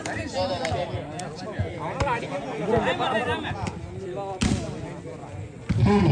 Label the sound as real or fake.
real